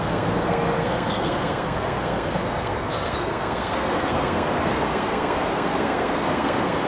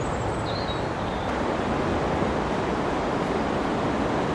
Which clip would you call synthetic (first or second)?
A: first